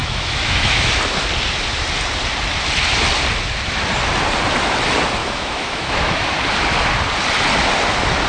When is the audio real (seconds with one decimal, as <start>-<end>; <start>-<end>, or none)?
0.9-5.2; 6.2-8.3

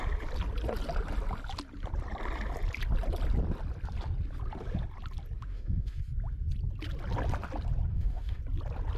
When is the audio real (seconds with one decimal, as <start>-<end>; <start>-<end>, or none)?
0.0-5.5; 6.0-7.9; 8.4-9.0

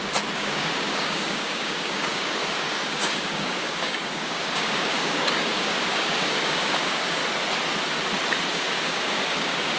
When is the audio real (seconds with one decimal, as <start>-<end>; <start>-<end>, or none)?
7.2-8.5

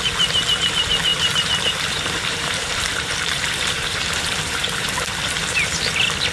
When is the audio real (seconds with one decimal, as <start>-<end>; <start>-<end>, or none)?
0.0-1.1; 4.9-6.3

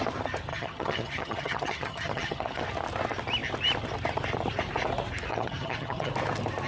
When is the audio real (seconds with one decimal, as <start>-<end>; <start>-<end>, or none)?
0.0-0.5; 2.6-5.3; 6.1-6.7